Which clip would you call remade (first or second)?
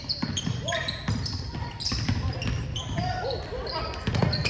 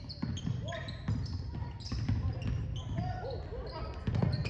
first